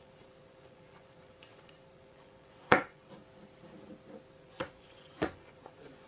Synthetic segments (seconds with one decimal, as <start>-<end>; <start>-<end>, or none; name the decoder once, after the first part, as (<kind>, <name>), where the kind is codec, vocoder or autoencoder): 0.0-3.2 (vocoder, Vocos); 4.3-6.1